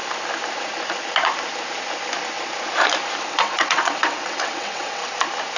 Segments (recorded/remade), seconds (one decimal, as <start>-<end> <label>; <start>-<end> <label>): 0.0-3.2 recorded; 3.2-5.0 remade; 5.0-5.6 recorded